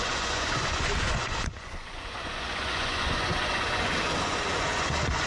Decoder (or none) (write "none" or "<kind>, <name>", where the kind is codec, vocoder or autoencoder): vocoder, Vocos